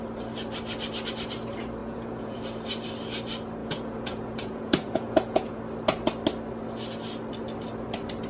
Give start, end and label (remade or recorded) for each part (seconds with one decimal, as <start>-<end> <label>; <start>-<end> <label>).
0.0-1.8 recorded; 1.8-2.4 remade; 2.4-3.6 recorded; 3.6-5.6 remade; 5.6-8.3 recorded